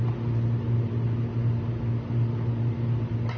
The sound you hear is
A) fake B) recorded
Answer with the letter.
B